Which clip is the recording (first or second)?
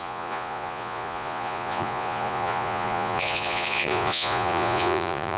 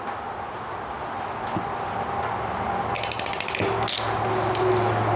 second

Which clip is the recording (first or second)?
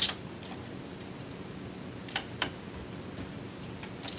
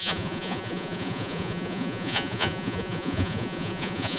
first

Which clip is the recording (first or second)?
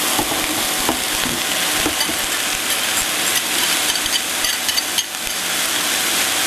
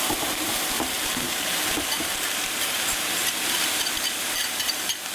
first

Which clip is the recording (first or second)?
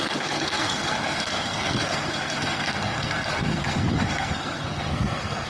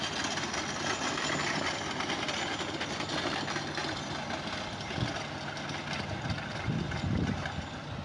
second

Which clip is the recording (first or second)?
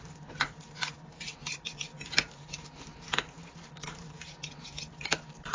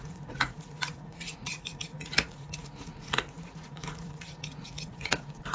first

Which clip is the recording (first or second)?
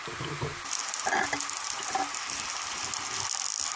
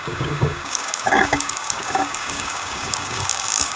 first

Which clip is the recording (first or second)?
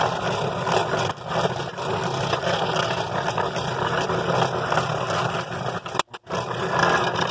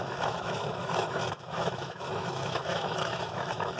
first